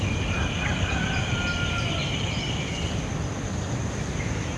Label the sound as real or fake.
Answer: fake